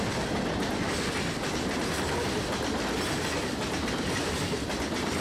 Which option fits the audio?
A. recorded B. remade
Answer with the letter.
A